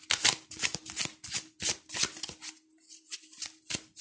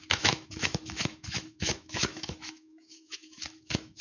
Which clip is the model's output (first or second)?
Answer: second